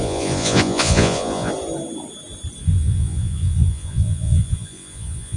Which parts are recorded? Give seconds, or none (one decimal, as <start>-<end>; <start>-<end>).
1.5-2.6